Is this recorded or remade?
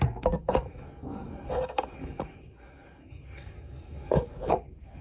remade